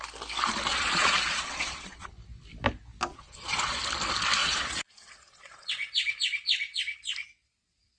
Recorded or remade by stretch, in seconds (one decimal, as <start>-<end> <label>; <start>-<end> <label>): 0.0-0.7 recorded; 0.7-2.1 remade; 2.1-3.1 recorded; 3.1-3.8 remade; 3.8-4.4 recorded; 4.4-5.7 remade; 5.7-8.0 recorded